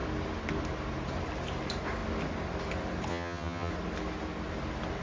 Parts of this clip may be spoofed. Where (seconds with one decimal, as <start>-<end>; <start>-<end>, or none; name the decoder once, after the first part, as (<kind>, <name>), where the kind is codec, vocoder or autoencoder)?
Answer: 3.1-3.7 (vocoder, HiFi-GAN)